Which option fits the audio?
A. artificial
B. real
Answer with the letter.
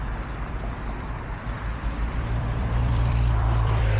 A